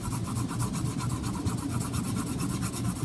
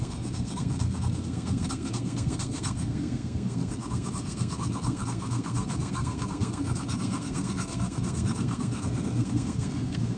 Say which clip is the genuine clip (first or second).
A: first